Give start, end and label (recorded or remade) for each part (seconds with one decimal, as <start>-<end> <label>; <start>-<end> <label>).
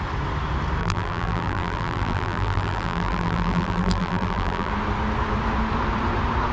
0.0-0.8 recorded; 0.8-4.7 remade; 4.7-6.5 recorded